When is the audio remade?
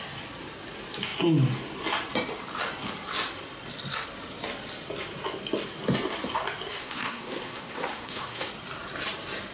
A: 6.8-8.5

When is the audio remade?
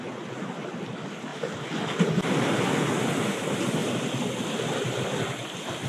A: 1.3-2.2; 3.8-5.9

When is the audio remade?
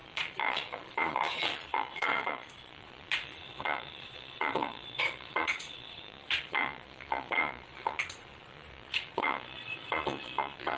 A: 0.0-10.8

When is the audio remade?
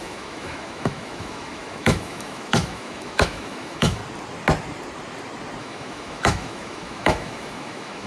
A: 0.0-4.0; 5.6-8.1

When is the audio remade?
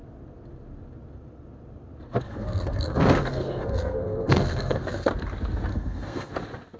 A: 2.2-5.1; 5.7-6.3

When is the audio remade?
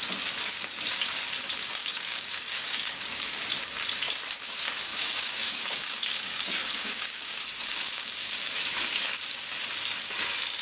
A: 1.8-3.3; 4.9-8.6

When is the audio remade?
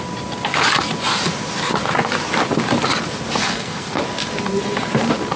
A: 3.4-4.0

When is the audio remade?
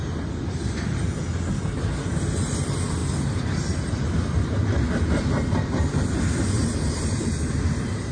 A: none